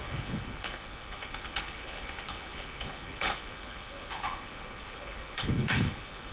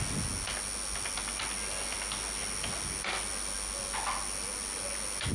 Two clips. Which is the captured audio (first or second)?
second